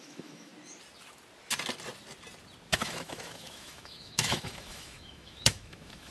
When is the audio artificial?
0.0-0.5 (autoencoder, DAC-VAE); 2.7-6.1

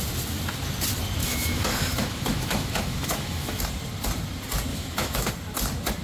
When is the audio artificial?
1.2-3.6 (autoencoder, DAC-VAE); 4.7-5.3

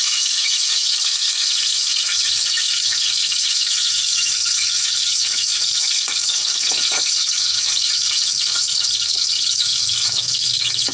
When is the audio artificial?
0.0-10.9 (autoencoder, DAC-VAE)